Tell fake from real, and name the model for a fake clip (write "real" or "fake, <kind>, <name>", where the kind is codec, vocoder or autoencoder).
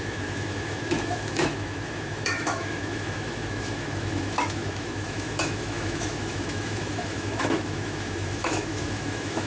fake, autoencoder, DAC-VAE